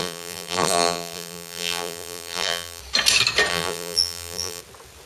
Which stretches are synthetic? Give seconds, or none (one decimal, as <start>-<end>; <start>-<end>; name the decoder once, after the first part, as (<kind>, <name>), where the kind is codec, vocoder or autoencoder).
0.0-2.8 (vocoder, BigVGAN v2); 3.5-4.6